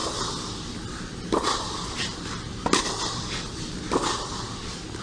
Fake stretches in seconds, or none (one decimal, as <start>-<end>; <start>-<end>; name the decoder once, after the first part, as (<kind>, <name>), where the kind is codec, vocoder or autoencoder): none